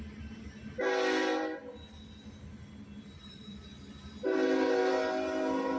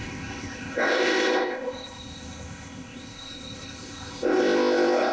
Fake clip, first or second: second